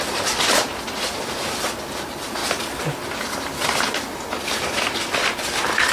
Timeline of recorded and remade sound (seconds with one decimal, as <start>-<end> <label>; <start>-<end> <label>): 0.0-5.9 recorded